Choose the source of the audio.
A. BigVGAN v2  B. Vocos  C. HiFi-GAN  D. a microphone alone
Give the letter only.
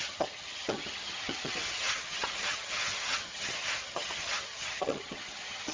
C